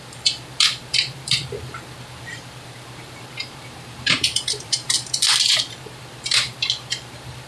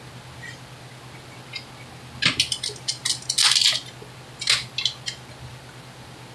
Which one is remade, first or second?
first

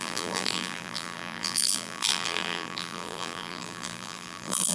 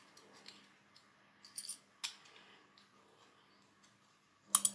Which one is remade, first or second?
first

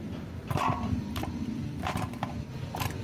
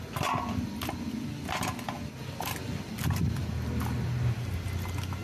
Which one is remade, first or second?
first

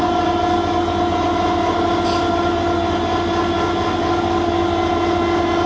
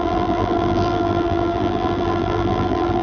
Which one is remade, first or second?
second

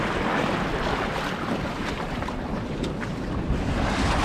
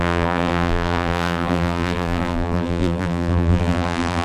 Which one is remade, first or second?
second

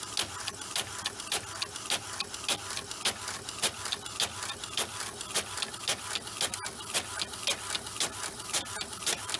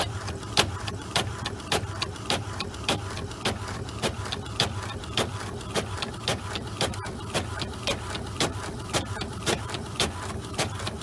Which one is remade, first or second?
second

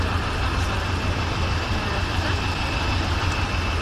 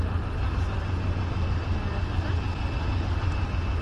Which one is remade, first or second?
first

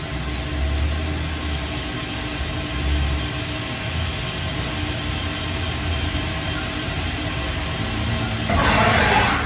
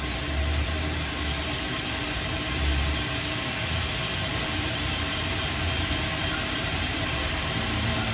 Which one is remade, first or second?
second